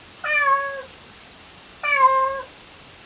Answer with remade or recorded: recorded